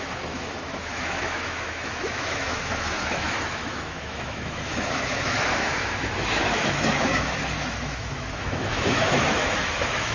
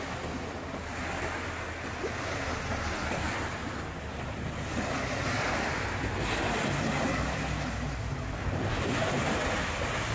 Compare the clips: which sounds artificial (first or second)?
first